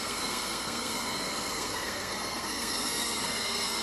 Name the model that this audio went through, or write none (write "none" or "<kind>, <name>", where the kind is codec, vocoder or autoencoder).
codec, SNAC